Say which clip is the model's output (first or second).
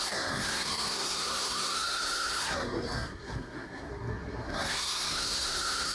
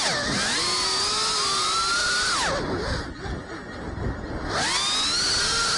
first